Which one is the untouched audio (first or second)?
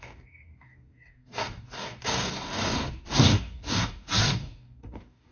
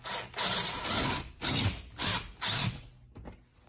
second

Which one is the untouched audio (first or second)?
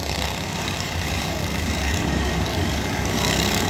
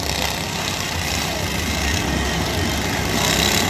second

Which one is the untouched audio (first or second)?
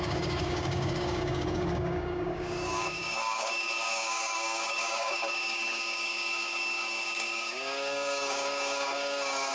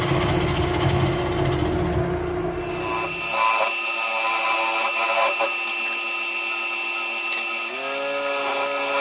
second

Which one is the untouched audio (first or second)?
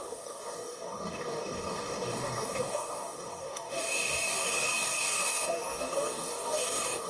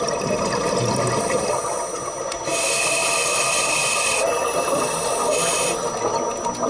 second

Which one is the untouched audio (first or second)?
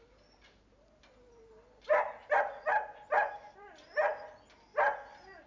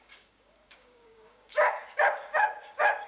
first